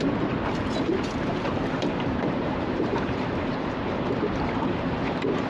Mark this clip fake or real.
fake